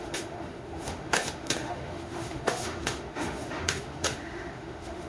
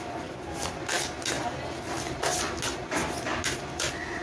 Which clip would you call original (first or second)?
second